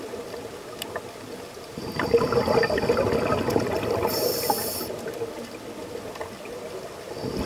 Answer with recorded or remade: recorded